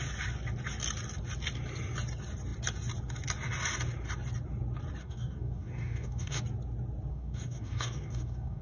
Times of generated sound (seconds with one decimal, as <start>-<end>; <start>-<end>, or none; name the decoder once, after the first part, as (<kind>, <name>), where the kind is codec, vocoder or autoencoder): 5.0-6.4 (codec, DAC); 7.1-8.6

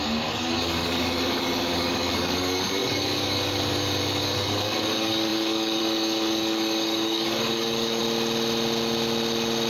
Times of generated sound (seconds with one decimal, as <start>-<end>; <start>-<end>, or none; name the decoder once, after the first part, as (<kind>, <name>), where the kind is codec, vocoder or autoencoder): 0.0-8.0 (codec, DAC)

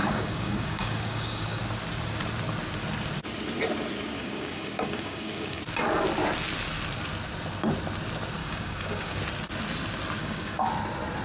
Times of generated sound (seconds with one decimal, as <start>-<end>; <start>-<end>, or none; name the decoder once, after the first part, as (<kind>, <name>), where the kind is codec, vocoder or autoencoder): 0.0-1.6 (codec, DAC); 4.2-5.6; 8.4-9.2; 10.2-10.7

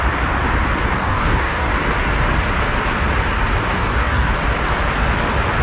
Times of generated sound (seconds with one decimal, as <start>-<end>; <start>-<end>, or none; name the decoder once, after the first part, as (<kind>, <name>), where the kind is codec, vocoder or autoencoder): 1.0-1.7 (codec, DAC); 3.7-4.3